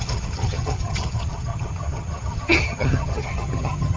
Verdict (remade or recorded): remade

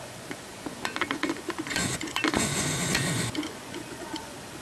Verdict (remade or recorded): remade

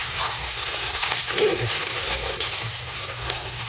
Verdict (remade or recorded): remade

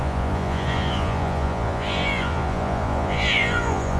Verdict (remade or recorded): remade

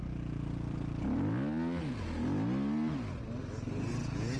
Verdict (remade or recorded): recorded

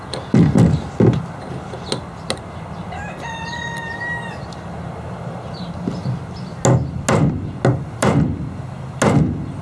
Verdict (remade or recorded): recorded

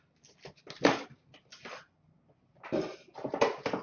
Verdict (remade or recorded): recorded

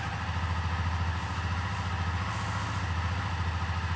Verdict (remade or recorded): recorded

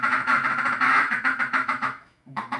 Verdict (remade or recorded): remade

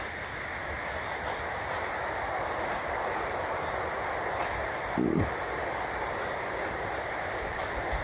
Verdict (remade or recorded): remade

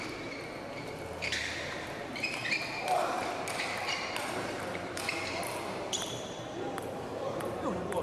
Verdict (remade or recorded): remade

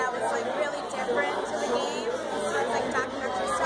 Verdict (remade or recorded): recorded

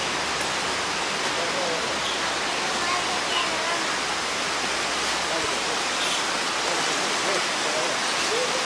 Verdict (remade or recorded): recorded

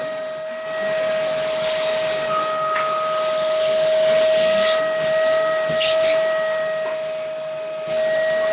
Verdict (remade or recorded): recorded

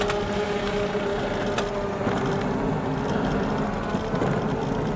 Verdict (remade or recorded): recorded